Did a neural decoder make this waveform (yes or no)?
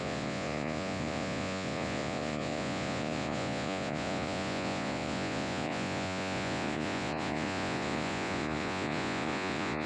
yes